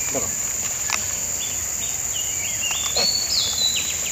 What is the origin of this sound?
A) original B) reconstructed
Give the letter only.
A